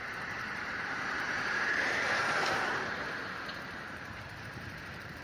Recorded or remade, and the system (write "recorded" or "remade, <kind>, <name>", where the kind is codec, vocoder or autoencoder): remade, vocoder, BigVGAN v2